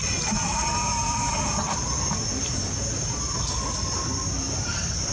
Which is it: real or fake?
real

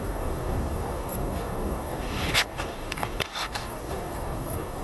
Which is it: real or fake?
fake